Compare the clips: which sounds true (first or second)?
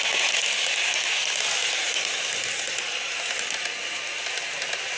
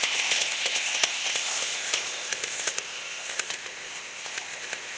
first